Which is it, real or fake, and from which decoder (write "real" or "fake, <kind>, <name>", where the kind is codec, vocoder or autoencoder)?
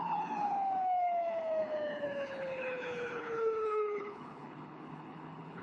fake, codec, HILCodec